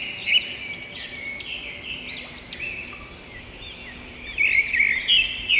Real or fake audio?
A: real